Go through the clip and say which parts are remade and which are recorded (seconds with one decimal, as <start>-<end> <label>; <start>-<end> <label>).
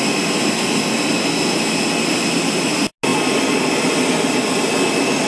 0.0-5.3 recorded